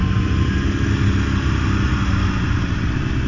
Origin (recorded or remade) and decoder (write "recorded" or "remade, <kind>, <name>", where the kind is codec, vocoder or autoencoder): recorded